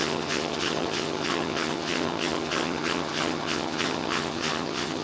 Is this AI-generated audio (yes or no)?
yes